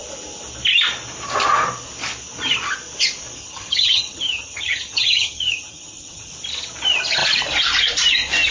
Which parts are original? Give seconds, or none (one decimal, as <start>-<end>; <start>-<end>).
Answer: 0.0-3.4; 6.3-8.5